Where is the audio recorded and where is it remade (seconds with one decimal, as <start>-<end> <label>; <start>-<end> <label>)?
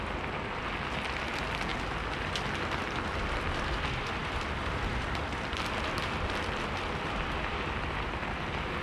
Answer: 0.0-8.8 recorded